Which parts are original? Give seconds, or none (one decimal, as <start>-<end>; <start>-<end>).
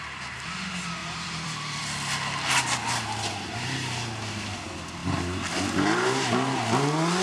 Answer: 0.0-1.0; 1.8-7.2